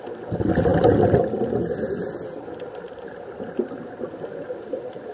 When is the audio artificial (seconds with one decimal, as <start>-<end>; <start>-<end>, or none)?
none